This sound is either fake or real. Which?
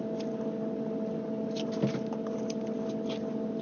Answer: real